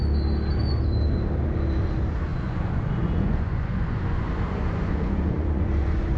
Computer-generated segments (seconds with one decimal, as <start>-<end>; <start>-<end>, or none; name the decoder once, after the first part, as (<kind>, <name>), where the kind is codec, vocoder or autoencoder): 2.3-6.2 (vocoder, Vocos)